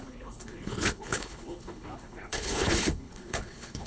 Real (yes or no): no